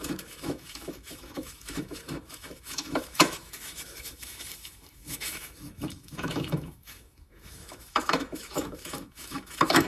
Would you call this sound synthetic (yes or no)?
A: yes